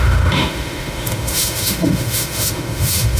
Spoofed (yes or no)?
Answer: yes